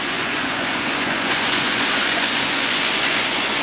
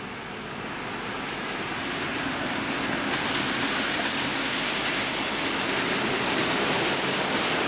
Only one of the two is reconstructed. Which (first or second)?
first